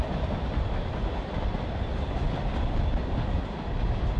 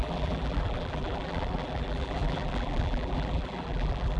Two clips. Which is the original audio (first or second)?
first